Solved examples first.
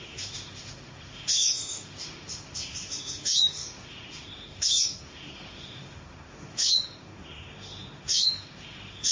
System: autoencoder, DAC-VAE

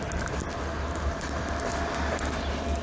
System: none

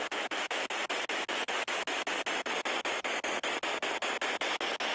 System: none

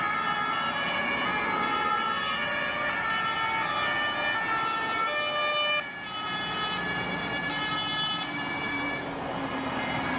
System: none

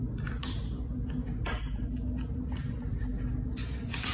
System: none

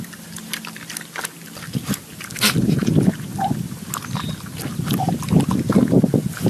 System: none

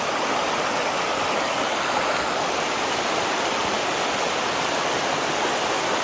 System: none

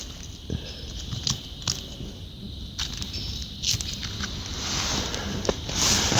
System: none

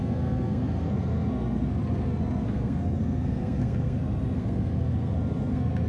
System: codec, SNAC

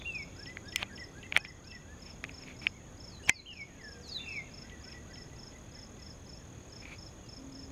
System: none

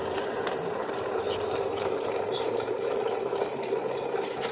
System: vocoder, BigVGAN v2